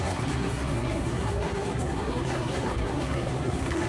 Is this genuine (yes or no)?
no